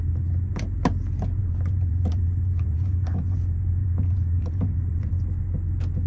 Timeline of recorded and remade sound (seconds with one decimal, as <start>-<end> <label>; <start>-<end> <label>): 0.0-1.4 recorded; 1.4-5.1 remade; 5.1-6.1 recorded